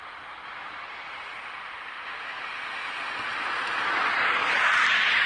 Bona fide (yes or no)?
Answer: yes